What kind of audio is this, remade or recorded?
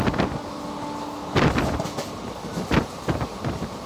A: recorded